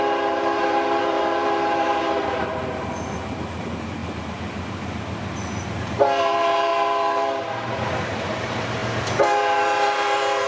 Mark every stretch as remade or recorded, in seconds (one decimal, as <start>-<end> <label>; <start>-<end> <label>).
0.0-10.5 remade